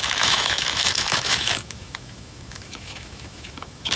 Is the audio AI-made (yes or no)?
yes